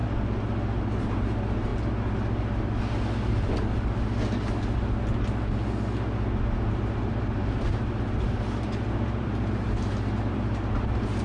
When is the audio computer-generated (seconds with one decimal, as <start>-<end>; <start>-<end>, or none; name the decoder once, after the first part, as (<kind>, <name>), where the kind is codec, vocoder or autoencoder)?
0.8-1.7 (vocoder, BigVGAN v2); 6.7-11.2